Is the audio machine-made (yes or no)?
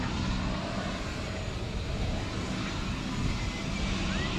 no